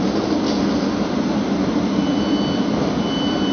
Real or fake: real